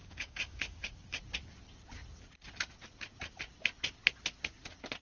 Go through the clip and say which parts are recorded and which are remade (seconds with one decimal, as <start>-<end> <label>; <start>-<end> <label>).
0.0-1.2 remade; 1.2-5.0 recorded